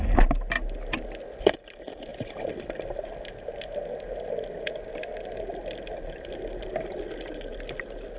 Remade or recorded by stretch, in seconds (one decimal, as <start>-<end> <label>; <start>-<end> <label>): 0.0-8.2 recorded